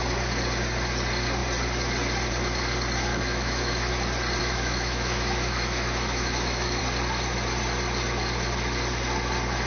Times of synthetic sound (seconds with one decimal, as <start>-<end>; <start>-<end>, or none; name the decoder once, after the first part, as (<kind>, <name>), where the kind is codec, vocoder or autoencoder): 3.1-3.9 (autoencoder, DAC-VAE); 4.4-6.8